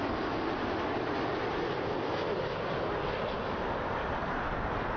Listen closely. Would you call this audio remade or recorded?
recorded